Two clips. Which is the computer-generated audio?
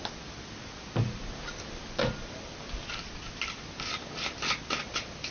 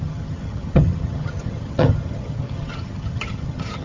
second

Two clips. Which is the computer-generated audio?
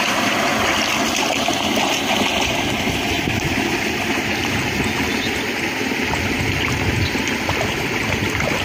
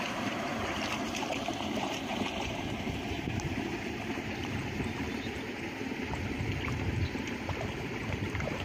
second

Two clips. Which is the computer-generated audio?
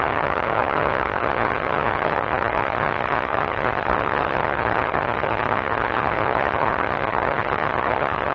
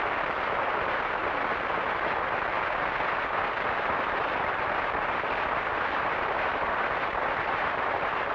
first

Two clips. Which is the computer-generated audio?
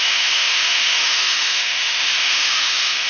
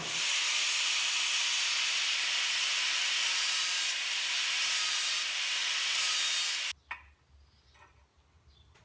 first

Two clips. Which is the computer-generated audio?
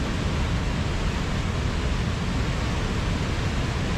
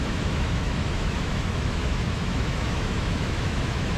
second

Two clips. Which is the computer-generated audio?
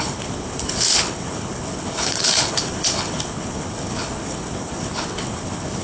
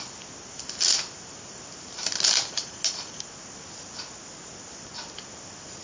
first